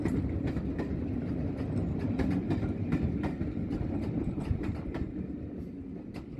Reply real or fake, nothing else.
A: real